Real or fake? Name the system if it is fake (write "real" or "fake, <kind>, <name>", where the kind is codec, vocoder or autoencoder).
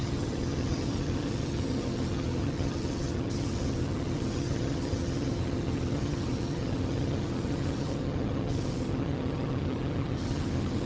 fake, vocoder, HiFi-GAN